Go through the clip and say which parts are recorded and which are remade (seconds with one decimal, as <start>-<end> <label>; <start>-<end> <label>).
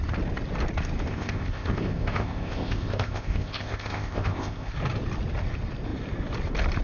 0.0-1.1 recorded; 1.1-4.7 remade; 4.7-6.8 recorded